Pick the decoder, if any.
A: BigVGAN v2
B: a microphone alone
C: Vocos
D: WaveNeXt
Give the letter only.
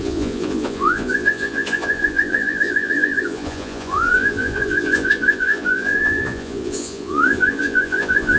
C